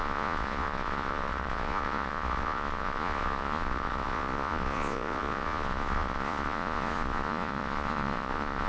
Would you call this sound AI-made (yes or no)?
yes